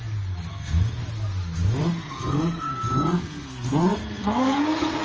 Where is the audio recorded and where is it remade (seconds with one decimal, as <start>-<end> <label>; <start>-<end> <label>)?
0.0-0.5 recorded; 0.5-1.0 remade; 1.0-1.8 recorded; 1.8-5.0 remade